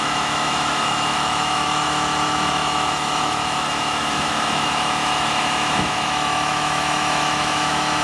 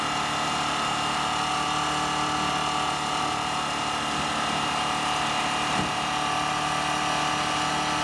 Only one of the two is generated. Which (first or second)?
first